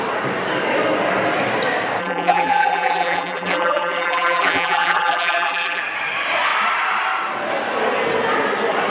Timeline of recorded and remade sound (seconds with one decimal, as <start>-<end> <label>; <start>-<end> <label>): 0.0-2.0 recorded; 2.0-5.8 remade; 5.8-8.9 recorded